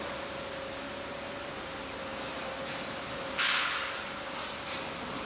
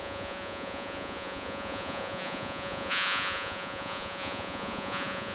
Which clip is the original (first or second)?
first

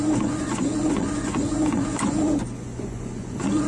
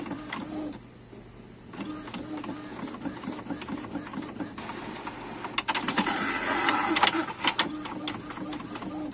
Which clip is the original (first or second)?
second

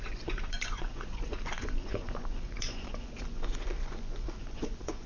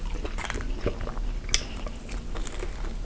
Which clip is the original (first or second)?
second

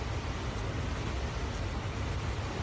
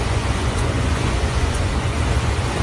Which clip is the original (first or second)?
first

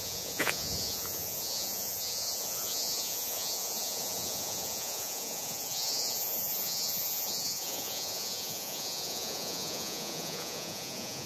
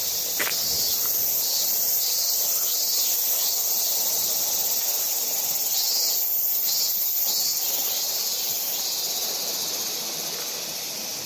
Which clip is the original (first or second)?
second